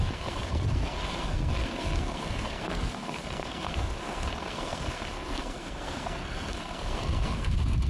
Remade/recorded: remade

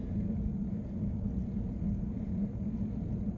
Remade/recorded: recorded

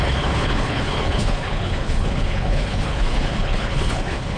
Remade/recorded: remade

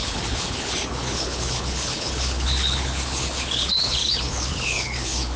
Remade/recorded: remade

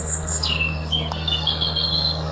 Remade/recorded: remade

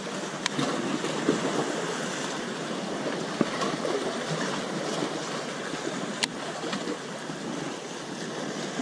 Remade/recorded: recorded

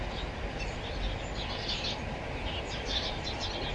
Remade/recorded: recorded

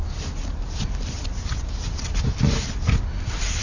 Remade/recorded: recorded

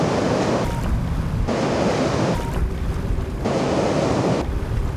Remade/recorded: recorded